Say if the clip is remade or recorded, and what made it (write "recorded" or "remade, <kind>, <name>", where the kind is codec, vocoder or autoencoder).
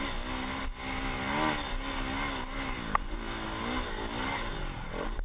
recorded